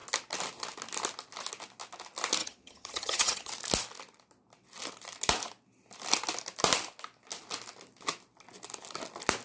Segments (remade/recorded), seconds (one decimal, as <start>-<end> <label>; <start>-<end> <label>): 0.0-2.4 recorded; 2.4-3.5 remade; 3.5-9.4 recorded

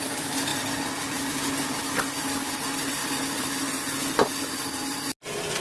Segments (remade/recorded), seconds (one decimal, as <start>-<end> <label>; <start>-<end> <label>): 0.0-0.5 recorded; 0.5-1.3 remade; 1.3-5.6 recorded

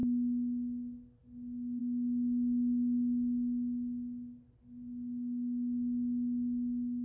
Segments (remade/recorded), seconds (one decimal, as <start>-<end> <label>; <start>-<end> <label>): 0.0-7.0 recorded

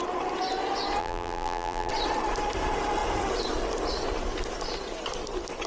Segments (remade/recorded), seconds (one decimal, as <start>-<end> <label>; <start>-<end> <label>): 0.0-1.0 recorded; 1.0-1.9 remade; 1.9-5.7 recorded

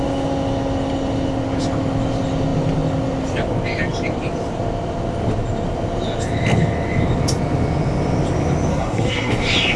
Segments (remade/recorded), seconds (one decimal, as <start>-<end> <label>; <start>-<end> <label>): 0.0-8.7 recorded; 8.7-9.3 remade; 9.3-9.8 recorded

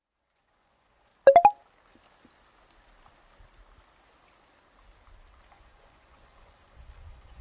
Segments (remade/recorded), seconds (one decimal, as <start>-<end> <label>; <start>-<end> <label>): 0.0-1.1 remade; 1.1-5.5 recorded; 5.5-7.4 remade